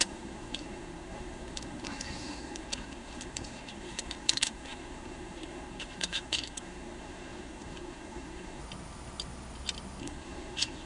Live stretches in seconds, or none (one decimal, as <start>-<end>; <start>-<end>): 8.6-10.0